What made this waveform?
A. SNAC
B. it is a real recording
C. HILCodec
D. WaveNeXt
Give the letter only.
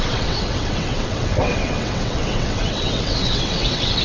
D